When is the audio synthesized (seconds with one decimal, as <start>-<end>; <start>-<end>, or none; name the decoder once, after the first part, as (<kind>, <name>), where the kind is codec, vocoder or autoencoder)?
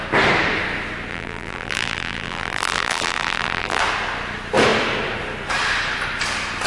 1.1-3.8 (vocoder, BigVGAN v2)